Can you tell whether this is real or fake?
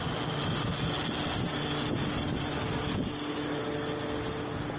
real